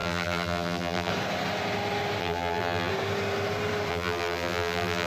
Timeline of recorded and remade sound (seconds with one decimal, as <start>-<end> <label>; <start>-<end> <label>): 0.0-1.1 remade; 1.1-2.2 recorded; 2.2-2.9 remade; 2.9-3.9 recorded; 3.9-5.1 remade